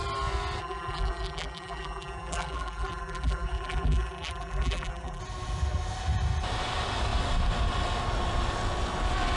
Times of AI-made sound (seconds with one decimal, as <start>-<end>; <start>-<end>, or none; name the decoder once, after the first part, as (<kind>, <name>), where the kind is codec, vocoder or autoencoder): 0.6-5.2 (vocoder, BigVGAN v2)